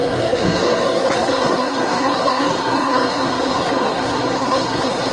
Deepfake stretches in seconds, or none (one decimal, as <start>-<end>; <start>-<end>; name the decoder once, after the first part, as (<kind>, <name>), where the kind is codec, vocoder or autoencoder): 0.0-5.1 (codec, SNAC)

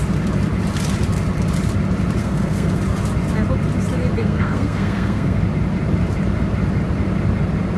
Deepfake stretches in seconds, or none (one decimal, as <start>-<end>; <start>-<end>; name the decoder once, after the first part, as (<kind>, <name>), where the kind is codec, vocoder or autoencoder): 2.2-2.8 (codec, SNAC); 4.2-5.4

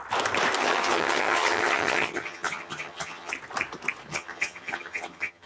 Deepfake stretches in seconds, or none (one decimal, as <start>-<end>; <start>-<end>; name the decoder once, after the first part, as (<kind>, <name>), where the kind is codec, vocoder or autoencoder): 0.6-3.3 (vocoder, HiFi-GAN); 4.1-5.5

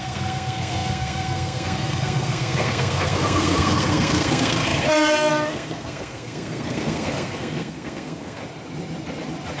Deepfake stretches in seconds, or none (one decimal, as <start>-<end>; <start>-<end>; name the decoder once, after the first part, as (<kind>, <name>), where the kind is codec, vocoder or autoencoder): 0.0-8.4 (codec, SNAC)

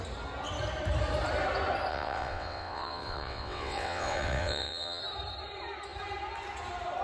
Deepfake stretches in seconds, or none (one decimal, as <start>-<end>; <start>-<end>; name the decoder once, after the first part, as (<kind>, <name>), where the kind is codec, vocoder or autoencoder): 1.9-5.0 (vocoder, WaveNeXt)

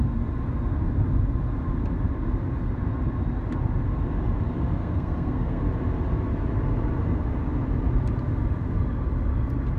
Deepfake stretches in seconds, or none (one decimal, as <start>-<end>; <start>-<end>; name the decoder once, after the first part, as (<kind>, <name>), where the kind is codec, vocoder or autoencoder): 4.8-5.6 (codec, SNAC)

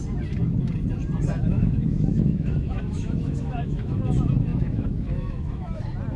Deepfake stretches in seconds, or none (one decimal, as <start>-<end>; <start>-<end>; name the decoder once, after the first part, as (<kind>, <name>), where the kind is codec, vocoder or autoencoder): 1.5-4.0 (autoencoder, DAC-VAE); 4.5-5.8

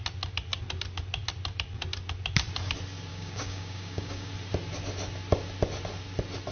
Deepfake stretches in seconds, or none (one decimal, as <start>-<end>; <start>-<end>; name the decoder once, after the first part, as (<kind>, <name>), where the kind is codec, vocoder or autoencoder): 3.1-4.3 (codec, DAC)